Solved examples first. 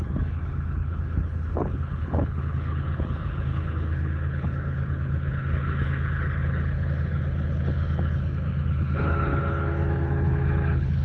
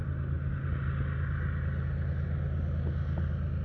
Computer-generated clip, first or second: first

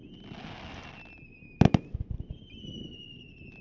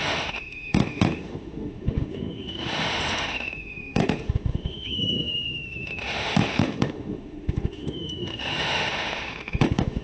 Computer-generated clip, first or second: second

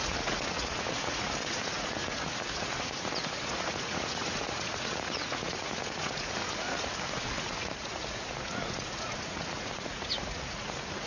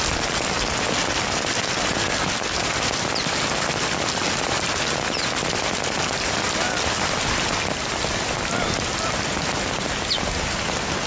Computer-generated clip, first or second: first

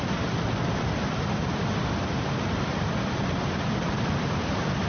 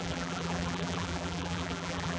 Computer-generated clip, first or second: second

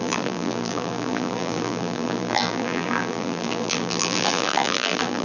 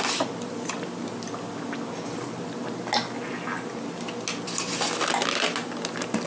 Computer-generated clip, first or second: first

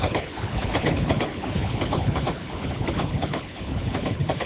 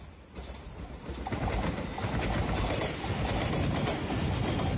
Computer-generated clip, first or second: first